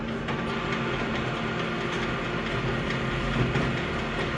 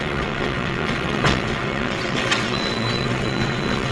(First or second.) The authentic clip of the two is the first